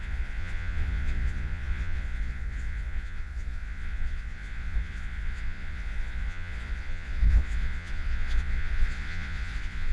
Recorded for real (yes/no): no